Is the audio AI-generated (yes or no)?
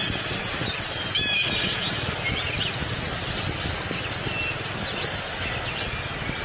no